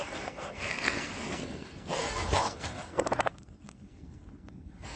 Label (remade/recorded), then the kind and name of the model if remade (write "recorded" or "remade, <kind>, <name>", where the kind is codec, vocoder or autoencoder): remade, codec, SNAC